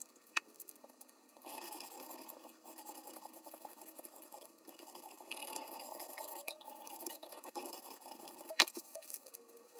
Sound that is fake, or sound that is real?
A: fake